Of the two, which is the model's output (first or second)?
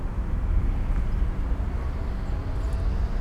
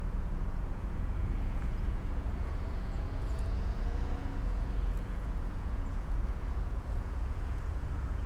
second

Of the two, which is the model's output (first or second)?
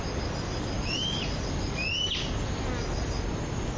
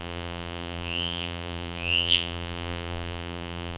second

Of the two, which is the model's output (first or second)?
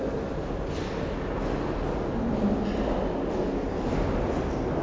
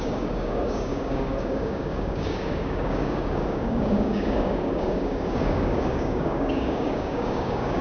second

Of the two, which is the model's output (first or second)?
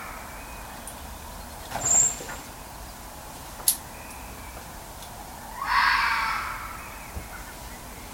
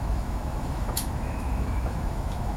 second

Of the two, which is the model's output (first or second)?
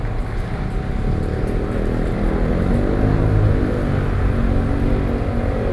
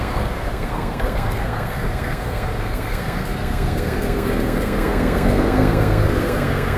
second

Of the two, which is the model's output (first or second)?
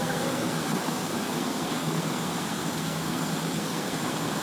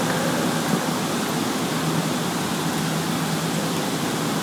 first